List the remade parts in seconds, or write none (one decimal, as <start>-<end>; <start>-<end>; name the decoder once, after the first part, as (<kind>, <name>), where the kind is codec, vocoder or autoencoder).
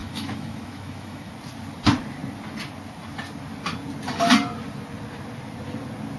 0.0-1.3 (autoencoder, DAC-VAE)